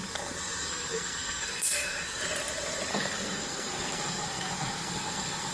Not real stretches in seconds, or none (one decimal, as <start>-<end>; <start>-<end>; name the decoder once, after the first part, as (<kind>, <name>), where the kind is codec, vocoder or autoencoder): 0.7-2.2 (codec, SNAC); 2.9-5.5

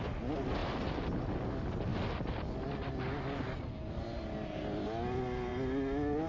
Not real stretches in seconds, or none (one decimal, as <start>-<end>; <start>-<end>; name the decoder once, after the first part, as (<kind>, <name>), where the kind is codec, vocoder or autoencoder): none

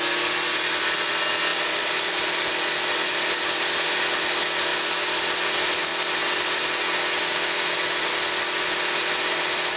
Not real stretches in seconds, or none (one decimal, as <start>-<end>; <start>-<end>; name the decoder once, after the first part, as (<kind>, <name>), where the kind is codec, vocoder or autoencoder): 1.5-2.6 (vocoder, BigVGAN v2)

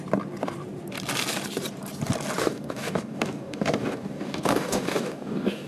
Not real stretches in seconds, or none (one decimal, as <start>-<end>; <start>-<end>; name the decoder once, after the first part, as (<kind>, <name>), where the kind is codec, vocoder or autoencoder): 2.4-5.7 (codec, DAC)

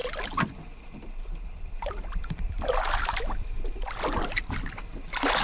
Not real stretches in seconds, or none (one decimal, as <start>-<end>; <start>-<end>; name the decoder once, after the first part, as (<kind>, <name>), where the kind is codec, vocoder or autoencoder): none

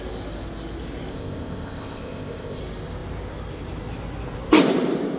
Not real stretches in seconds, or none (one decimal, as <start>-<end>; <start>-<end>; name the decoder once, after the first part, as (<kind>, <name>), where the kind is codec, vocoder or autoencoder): 1.1-2.6 (codec, ZipCodec)

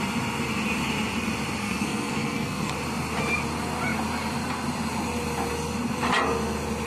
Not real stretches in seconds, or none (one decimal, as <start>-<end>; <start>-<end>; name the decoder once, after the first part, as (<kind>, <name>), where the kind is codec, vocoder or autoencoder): 1.6-2.7 (codec, SNAC)